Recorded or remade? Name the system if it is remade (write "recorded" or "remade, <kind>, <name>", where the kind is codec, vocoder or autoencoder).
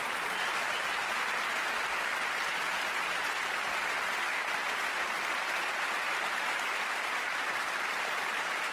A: recorded